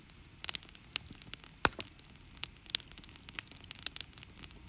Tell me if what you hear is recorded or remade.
recorded